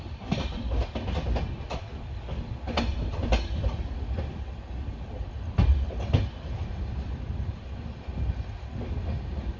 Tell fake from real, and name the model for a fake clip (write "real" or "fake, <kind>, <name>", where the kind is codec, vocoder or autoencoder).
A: real